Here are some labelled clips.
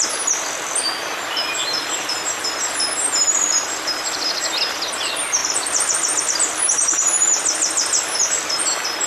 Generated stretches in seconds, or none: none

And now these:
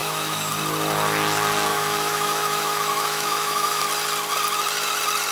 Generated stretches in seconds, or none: 0.0-0.5 (autoencoder, DAC-VAE); 1.7-3.8